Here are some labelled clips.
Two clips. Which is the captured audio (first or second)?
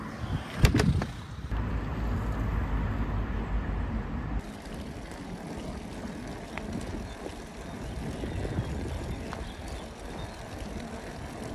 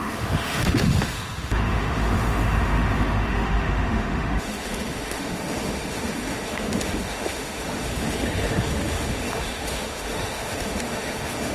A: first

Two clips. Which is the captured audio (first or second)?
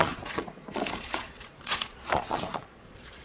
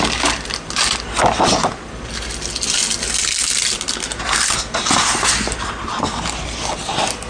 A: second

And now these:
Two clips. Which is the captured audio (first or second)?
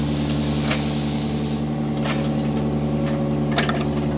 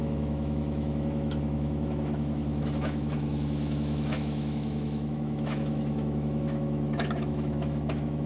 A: first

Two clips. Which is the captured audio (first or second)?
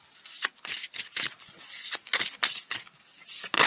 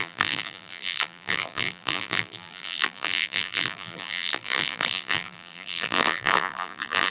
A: first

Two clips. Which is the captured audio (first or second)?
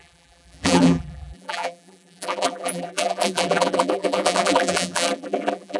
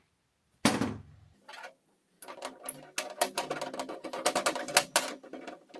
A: second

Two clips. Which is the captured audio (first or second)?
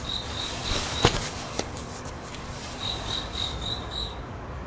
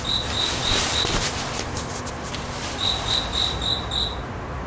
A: second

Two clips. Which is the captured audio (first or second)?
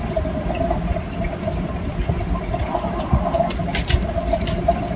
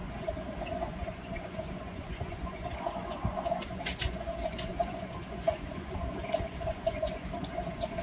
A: first